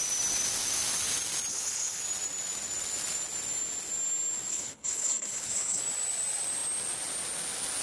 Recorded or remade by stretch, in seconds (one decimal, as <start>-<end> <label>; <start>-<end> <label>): 0.0-1.5 recorded; 1.5-2.0 remade; 2.0-4.5 recorded; 4.5-5.8 remade; 5.8-7.8 recorded

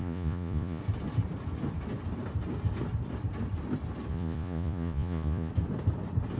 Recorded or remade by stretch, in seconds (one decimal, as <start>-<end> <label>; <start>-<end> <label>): 0.0-0.8 remade; 0.8-4.1 recorded; 4.1-5.5 remade; 5.5-6.4 recorded

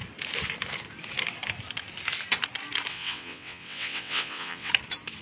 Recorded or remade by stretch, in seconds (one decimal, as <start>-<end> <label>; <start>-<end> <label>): 0.0-2.9 recorded; 2.9-4.7 remade; 4.7-5.2 recorded

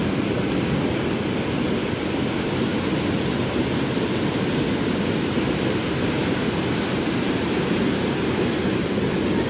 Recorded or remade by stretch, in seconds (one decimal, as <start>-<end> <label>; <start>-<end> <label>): 0.0-9.5 recorded

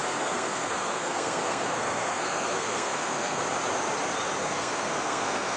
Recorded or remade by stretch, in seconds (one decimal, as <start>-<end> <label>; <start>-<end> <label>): 0.0-3.4 remade; 3.4-4.4 recorded; 4.4-5.6 remade

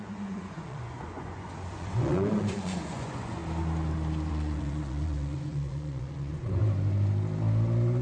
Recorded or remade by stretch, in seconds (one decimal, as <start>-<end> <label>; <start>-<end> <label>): 0.0-3.4 remade; 3.4-4.3 recorded; 4.3-6.6 remade; 6.6-8.0 recorded

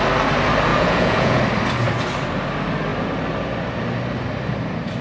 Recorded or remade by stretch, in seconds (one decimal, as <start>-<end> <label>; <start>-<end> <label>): 0.0-0.7 recorded; 0.7-1.4 remade; 1.4-5.0 recorded